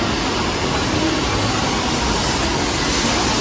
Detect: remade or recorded recorded